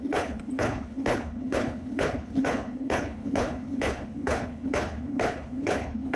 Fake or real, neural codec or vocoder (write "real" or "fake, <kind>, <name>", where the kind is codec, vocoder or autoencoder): fake, codec, HILCodec